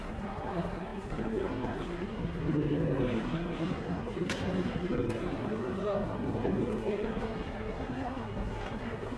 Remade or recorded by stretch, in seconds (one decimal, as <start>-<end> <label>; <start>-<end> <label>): 0.0-9.2 remade